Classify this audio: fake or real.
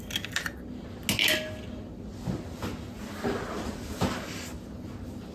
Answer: real